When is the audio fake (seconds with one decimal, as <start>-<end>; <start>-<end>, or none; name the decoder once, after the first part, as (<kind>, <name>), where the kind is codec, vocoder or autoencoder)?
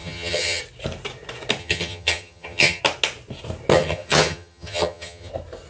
0.0-0.6 (vocoder, HiFi-GAN); 1.6-2.8; 3.7-5.3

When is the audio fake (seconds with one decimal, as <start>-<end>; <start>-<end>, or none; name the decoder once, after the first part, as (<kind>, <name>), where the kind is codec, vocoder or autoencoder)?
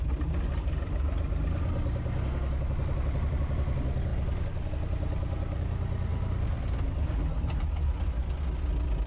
none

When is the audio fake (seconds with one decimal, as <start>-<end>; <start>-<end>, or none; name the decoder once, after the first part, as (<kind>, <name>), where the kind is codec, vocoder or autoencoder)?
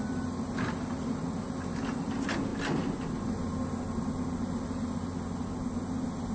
none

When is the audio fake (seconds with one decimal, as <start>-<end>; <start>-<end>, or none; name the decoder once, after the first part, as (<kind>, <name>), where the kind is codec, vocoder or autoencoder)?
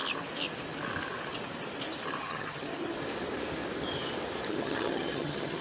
2.2-2.7 (vocoder, HiFi-GAN); 4.5-5.6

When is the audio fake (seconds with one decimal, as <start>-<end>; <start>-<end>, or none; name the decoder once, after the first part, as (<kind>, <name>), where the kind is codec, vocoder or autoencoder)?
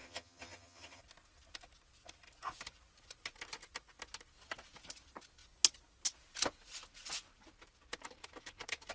0.0-1.0 (vocoder, HiFi-GAN)